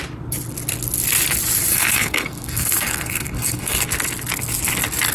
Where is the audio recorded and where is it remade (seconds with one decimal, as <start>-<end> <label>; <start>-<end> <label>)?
0.0-1.7 recorded; 1.7-3.8 remade; 3.8-5.1 recorded